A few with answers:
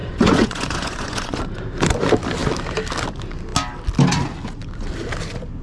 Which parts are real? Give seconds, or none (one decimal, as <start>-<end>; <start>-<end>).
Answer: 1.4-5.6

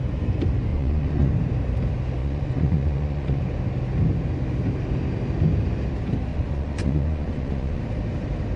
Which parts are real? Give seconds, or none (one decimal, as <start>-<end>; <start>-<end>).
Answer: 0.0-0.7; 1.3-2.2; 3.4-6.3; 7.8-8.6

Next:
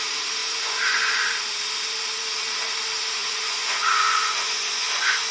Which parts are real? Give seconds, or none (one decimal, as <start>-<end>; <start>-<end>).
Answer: 0.0-0.4; 1.3-3.2

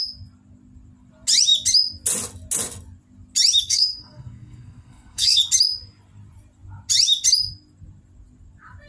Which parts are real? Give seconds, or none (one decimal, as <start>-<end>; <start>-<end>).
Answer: 0.0-3.6; 5.4-8.9

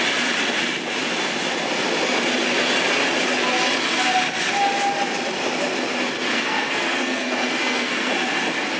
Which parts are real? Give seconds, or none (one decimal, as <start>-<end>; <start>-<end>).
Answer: 0.0-6.3; 8.1-8.8

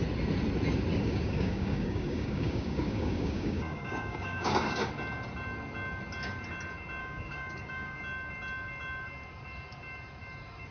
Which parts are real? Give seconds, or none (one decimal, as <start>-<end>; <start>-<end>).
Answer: 0.0-0.9; 4.9-7.0; 8.0-10.7

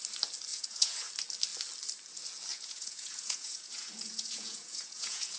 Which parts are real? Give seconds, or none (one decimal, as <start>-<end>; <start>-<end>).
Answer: 0.0-0.5; 1.1-2.5